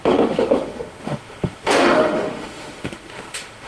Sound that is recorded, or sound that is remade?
remade